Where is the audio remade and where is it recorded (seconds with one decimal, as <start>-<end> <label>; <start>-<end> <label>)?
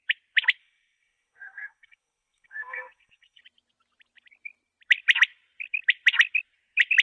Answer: 0.0-0.6 recorded; 0.6-3.4 remade; 3.4-7.0 recorded